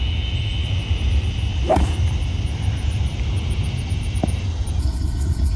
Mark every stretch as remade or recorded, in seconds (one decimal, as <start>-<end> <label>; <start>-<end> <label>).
0.0-4.8 recorded; 4.8-5.6 remade